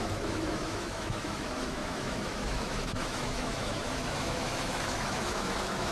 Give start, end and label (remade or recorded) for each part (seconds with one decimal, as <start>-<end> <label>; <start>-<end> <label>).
0.0-5.9 remade